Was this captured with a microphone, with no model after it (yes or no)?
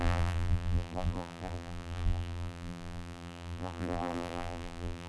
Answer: no